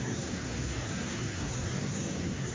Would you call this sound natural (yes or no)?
no